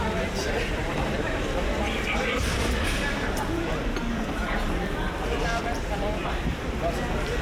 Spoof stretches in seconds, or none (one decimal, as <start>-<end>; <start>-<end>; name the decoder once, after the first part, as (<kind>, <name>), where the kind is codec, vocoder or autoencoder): 0.4-1.8 (vocoder, BigVGAN v2); 2.3-6.7